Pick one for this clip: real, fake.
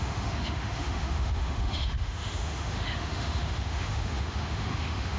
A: fake